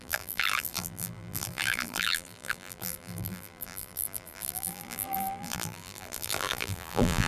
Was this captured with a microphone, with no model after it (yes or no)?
no